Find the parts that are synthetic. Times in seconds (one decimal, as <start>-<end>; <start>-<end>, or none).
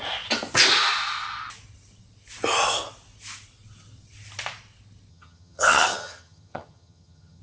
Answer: 5.1-7.4